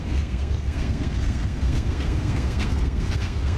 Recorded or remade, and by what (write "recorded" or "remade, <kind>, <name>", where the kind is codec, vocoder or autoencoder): remade, codec, SNAC